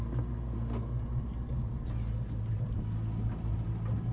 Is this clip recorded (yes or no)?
yes